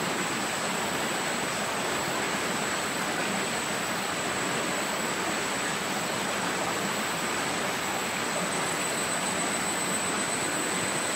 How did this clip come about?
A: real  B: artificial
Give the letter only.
A